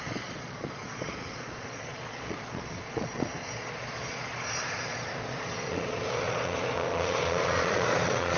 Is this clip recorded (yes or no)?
no